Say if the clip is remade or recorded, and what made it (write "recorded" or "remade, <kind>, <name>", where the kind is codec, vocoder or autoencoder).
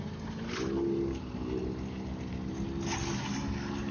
recorded